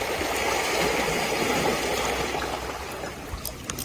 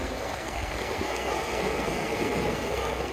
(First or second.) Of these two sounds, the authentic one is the first